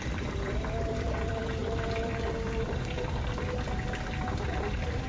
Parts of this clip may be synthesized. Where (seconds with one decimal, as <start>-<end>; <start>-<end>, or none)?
0.0-1.6